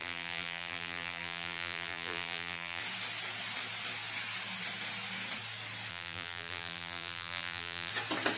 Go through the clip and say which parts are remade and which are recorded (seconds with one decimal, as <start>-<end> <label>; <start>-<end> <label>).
0.0-2.8 remade; 2.8-5.9 recorded; 5.9-7.9 remade; 7.9-8.4 recorded